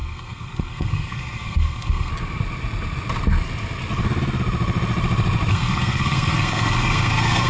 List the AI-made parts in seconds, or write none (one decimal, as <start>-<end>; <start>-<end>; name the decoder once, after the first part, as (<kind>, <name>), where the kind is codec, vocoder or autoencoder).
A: 0.0-2.1 (codec, SNAC); 5.5-7.5

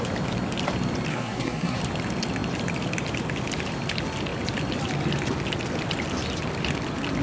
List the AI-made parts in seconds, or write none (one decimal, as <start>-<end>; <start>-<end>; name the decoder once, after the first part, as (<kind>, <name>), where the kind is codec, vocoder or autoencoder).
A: 1.1-1.8 (codec, SNAC)

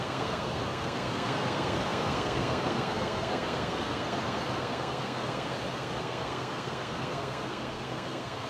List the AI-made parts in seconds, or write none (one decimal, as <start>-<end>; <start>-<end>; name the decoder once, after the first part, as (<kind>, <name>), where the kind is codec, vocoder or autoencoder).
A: 0.0-8.5 (codec, SNAC)

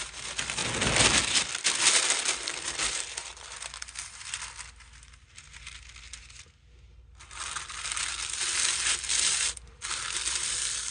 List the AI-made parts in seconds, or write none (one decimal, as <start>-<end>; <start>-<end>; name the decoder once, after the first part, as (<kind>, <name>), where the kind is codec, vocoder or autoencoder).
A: none

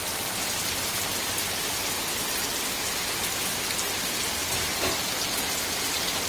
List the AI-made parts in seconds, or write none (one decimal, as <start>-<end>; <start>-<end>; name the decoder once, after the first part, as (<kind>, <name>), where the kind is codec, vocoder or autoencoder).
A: none